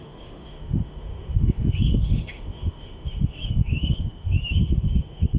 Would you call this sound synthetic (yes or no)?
yes